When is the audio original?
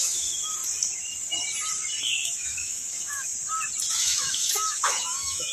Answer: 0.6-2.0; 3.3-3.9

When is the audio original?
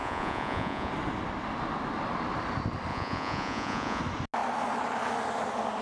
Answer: 0.9-2.9; 4.0-5.8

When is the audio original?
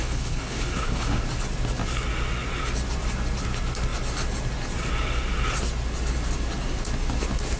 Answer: 1.2-7.6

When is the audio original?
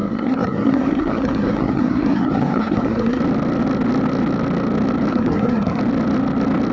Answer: 3.2-5.1; 5.8-6.7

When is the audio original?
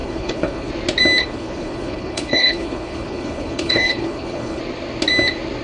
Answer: 0.7-1.2; 4.6-5.6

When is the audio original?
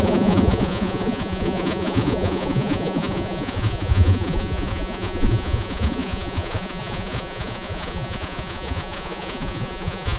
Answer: none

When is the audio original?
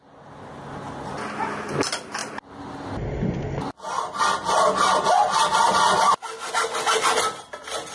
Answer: 0.0-7.9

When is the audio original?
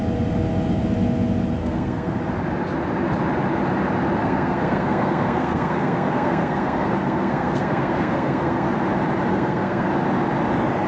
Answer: 0.0-1.6; 2.2-4.2; 8.7-9.3; 9.9-10.9